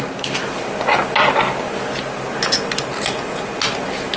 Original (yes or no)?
yes